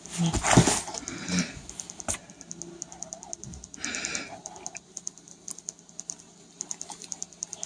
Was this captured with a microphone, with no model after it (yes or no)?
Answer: yes